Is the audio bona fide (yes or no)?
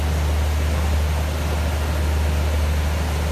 yes